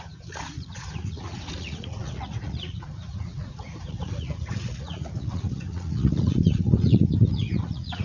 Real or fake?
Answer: fake